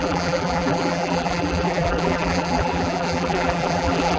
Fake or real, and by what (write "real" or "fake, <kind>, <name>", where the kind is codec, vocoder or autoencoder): fake, vocoder, BigVGAN v2